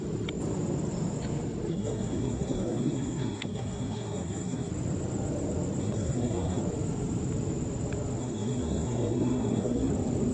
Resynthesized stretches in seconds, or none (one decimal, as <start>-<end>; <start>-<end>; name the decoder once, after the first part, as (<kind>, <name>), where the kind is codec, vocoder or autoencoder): 1.7-4.7 (codec, SNAC); 5.8-6.6; 8.2-9.9